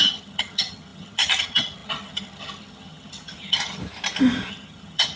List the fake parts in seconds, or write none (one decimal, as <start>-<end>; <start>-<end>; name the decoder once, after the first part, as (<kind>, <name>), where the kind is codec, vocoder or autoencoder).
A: 0.0-3.8 (vocoder, HiFi-GAN); 4.5-5.2